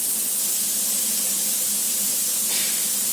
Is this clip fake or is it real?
real